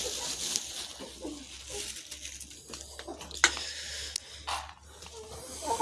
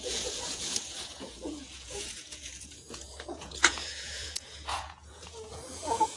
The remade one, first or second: second